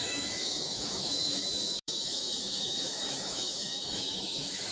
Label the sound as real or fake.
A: fake